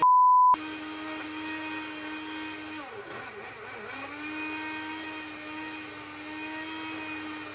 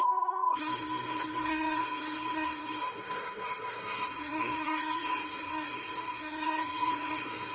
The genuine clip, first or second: first